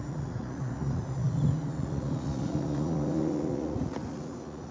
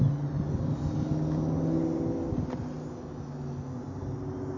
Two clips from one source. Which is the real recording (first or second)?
second